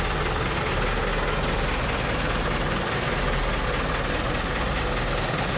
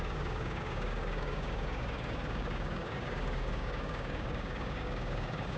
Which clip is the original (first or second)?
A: first